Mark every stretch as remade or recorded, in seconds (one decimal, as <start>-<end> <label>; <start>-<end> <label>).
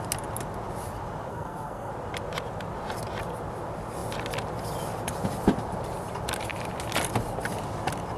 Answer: 0.0-1.3 recorded; 1.3-1.9 remade; 1.9-8.2 recorded